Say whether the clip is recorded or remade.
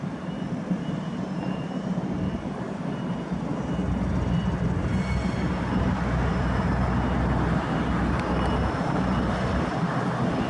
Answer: recorded